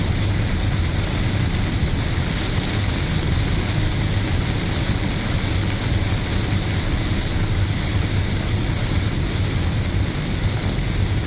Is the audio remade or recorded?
recorded